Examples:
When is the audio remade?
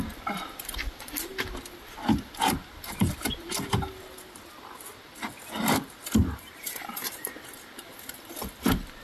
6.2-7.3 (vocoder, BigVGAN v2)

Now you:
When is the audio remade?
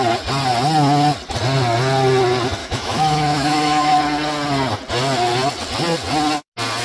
2.6-4.0 (autoencoder, DAC-VAE)